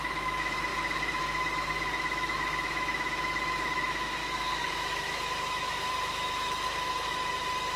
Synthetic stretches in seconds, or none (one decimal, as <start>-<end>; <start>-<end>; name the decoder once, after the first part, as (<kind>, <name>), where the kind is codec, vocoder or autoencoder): 0.0-0.7 (autoencoder, DAC-VAE); 1.2-4.2; 4.7-7.8